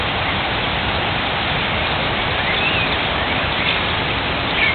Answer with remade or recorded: recorded